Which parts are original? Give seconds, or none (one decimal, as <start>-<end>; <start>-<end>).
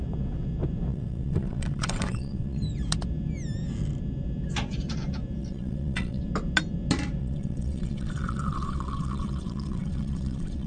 0.0-0.9; 2.6-5.4; 6.2-7.2